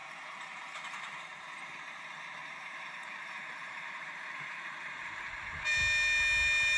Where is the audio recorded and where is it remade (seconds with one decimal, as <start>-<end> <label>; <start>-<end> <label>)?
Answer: 0.0-2.0 remade; 2.0-2.4 recorded; 2.4-5.3 remade; 5.3-6.8 recorded